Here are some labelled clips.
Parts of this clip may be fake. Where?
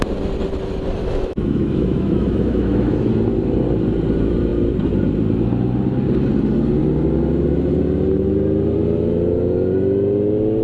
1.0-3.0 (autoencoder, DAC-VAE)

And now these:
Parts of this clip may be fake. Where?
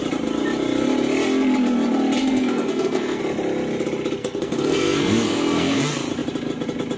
2.2-3.2 (codec, SNAC); 4.2-5.8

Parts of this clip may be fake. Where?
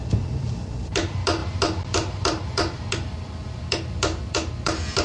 0.0-5.0 (vocoder, BigVGAN v2)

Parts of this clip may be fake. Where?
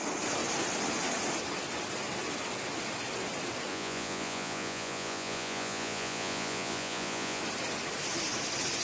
3.7-7.4 (vocoder, Vocos)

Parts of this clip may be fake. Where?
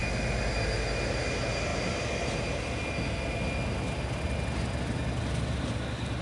none